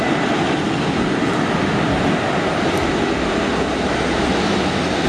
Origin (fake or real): real